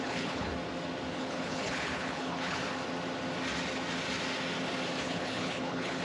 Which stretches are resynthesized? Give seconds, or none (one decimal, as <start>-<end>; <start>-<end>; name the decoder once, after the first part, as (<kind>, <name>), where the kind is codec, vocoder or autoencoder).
0.0-0.5 (codec, HILCodec); 1.1-2.6; 5.0-6.0